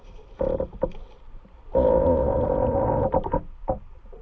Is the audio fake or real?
fake